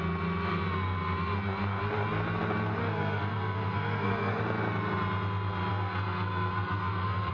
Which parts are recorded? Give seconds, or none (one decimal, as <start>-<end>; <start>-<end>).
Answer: 0.0-2.8; 4.4-5.7